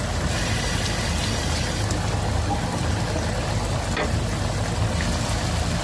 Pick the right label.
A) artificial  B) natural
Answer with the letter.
B